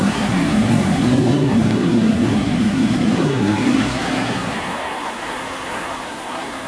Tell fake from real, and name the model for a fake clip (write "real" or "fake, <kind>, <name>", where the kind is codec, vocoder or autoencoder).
fake, codec, SNAC